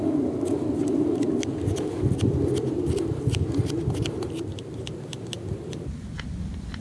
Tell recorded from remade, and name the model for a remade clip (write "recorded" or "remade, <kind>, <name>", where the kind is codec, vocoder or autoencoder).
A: recorded